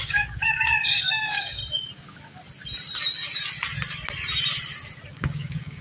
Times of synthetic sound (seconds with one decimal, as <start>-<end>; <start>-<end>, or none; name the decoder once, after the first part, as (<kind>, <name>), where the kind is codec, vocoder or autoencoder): 0.0-1.6 (codec, DAC); 5.1-5.8